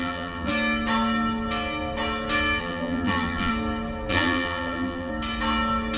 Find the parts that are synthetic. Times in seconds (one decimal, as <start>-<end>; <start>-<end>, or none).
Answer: 0.0-0.5; 2.6-3.5; 4.1-5.1